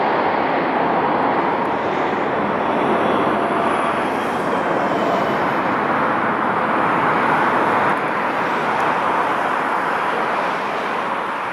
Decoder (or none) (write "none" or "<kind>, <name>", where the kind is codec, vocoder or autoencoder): none